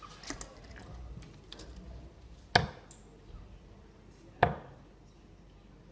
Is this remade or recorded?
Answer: recorded